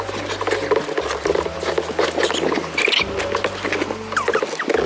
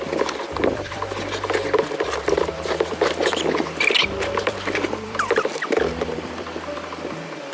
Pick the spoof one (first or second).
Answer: second